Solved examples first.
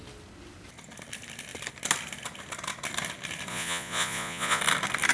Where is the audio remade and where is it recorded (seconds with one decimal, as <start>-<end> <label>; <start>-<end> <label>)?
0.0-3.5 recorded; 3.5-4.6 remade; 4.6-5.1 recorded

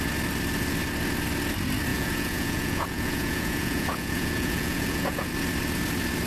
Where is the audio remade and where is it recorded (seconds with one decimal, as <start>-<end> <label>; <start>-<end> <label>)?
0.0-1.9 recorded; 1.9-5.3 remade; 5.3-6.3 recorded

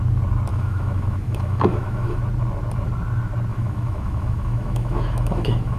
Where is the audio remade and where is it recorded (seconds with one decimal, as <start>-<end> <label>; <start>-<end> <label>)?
0.0-0.5 recorded; 0.5-2.2 remade; 2.2-3.5 recorded; 3.5-5.8 remade

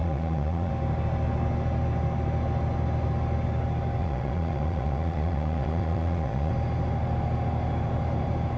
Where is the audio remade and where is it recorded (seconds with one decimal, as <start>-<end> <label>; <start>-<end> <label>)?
0.0-0.7 remade; 0.7-4.0 recorded; 4.0-6.5 remade; 6.5-8.6 recorded

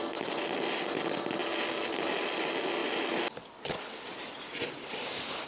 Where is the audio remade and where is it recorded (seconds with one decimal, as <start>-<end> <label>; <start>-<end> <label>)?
0.0-5.5 recorded

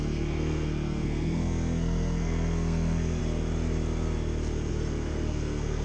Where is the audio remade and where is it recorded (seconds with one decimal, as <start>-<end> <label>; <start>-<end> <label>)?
0.0-3.2 remade; 3.2-4.7 recorded; 4.7-5.8 remade

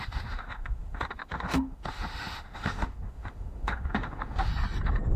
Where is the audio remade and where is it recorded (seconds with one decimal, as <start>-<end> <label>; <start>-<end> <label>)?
0.0-4.5 remade; 4.5-5.2 recorded

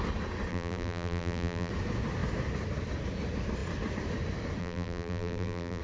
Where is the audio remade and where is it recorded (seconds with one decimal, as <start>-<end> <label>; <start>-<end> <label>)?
0.0-0.5 recorded; 0.5-1.7 remade; 1.7-4.6 recorded; 4.6-5.8 remade